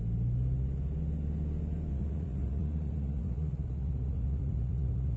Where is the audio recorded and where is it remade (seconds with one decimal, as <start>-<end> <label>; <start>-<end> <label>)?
0.0-1.9 recorded; 1.9-5.2 remade